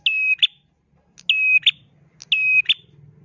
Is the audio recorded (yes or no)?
yes